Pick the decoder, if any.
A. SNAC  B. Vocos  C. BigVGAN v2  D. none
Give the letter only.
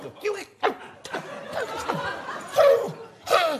D